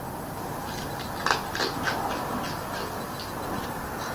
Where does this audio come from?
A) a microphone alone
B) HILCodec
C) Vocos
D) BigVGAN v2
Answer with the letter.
A